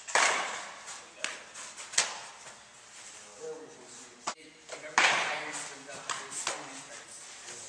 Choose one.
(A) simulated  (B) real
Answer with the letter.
B